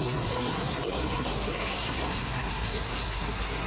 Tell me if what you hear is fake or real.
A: fake